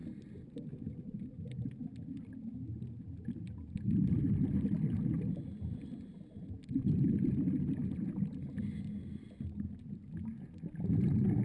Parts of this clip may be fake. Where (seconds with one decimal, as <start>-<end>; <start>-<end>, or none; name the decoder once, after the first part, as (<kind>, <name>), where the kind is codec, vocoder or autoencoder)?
none